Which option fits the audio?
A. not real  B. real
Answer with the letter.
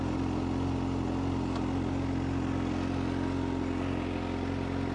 B